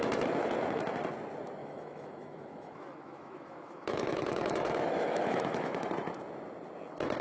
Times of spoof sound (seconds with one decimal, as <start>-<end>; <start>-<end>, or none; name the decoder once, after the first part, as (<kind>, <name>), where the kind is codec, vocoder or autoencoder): 1.6-5.9 (autoencoder, DAC-VAE)